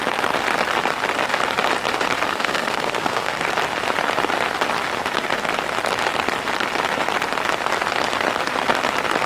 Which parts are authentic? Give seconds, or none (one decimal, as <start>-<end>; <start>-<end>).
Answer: 0.0-2.3; 3.3-9.3